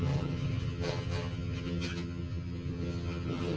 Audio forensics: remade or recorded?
remade